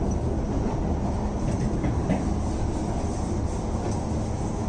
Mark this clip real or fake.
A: real